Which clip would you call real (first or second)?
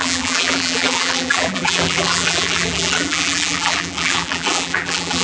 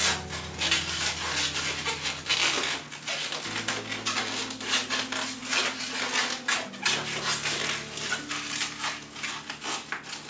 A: second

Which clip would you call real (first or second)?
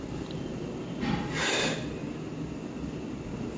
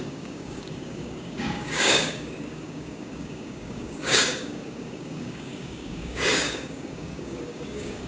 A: first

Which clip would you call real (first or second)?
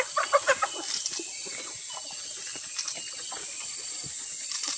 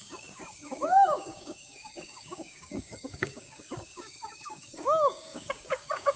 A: first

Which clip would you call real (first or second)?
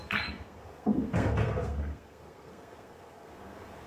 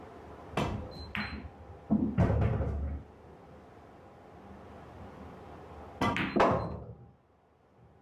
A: second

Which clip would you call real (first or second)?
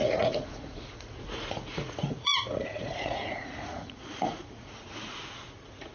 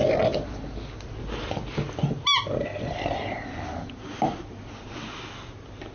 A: second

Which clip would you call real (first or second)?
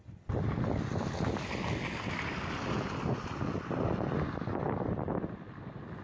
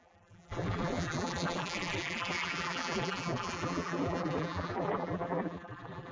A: first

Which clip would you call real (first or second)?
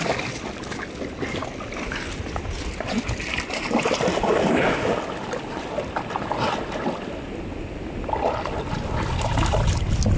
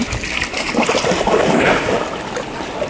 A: first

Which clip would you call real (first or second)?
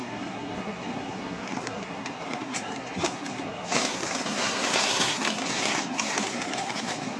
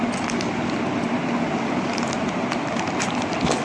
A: second